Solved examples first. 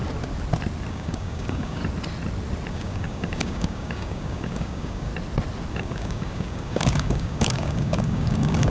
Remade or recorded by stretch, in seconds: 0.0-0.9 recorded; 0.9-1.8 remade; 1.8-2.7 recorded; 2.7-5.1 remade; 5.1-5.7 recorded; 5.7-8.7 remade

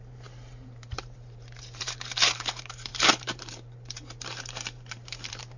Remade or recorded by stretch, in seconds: 0.0-5.6 remade